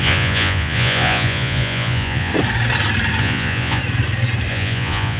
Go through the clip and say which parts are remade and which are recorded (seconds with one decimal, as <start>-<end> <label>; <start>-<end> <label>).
0.0-2.3 remade; 2.3-3.2 recorded; 3.2-3.8 remade; 3.8-4.5 recorded; 4.5-5.2 remade